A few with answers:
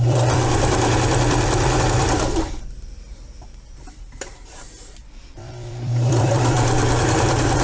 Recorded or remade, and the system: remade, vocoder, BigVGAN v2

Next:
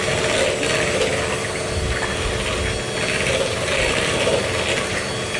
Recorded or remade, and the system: recorded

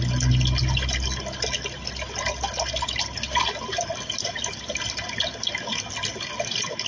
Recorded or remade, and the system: recorded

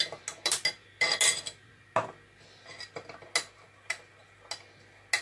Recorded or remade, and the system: recorded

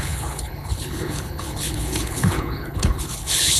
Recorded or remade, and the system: remade, codec, HILCodec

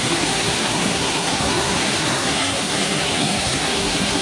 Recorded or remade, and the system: remade, codec, SNAC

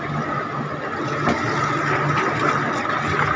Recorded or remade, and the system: recorded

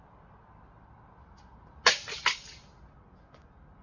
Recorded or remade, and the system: recorded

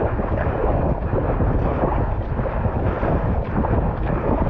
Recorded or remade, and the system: recorded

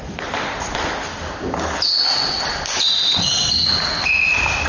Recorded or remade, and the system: recorded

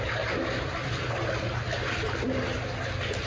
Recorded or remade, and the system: recorded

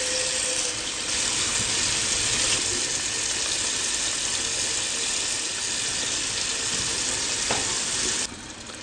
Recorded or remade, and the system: recorded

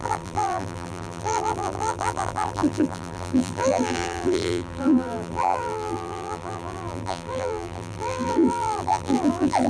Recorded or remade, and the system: remade, vocoder, BigVGAN v2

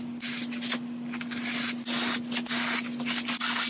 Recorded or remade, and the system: recorded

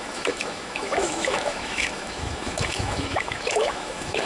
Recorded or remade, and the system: remade, autoencoder, DAC-VAE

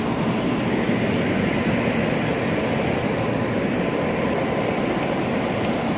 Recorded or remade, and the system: recorded